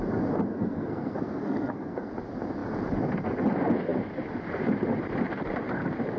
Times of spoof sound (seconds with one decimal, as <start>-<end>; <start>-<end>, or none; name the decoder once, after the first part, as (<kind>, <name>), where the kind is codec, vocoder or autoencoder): 0.5-2.1 (codec, SNAC)